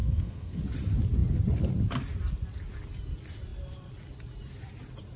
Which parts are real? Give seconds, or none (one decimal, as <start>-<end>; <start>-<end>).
0.6-5.2